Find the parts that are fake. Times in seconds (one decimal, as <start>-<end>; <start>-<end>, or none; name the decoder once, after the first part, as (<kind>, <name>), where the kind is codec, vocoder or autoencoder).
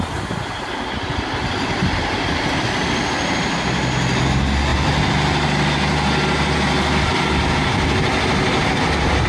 none